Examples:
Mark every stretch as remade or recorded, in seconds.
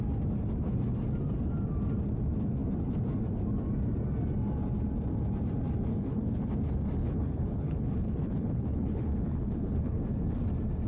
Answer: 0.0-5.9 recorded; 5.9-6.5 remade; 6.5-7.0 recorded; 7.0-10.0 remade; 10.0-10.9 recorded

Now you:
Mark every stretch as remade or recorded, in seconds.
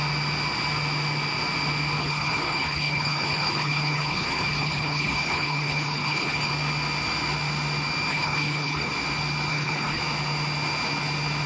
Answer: 0.0-2.0 recorded; 2.0-6.5 remade; 6.5-8.1 recorded; 8.1-8.9 remade; 8.9-9.5 recorded; 9.5-10.0 remade; 10.0-11.5 recorded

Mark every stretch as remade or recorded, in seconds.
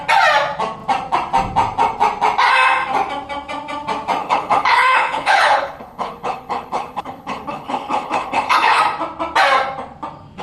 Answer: 0.0-4.2 recorded; 4.2-8.8 remade; 8.8-10.4 recorded